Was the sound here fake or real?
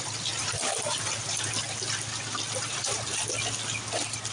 real